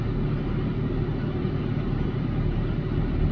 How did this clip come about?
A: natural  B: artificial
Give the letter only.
A